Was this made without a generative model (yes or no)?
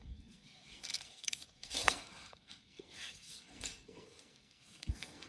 no